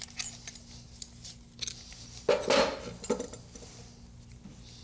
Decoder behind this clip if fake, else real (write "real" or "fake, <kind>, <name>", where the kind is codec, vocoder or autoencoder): real